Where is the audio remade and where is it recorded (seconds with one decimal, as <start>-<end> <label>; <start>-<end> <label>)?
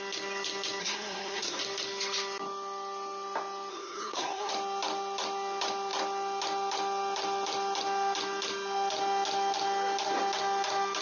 0.0-0.8 recorded; 0.8-1.6 remade; 1.6-3.7 recorded; 3.7-4.5 remade; 4.5-11.0 recorded